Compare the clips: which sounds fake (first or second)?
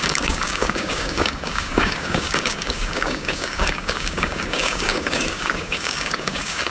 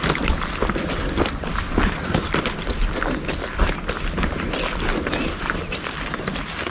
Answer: first